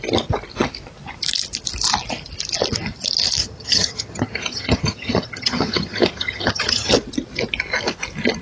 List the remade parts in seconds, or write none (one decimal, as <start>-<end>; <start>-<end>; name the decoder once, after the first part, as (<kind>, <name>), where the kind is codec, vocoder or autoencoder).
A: 3.4-6.9 (vocoder, HiFi-GAN)